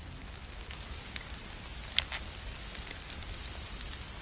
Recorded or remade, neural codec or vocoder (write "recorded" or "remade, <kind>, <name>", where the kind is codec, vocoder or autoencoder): recorded